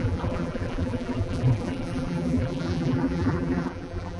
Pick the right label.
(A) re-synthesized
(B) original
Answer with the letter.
A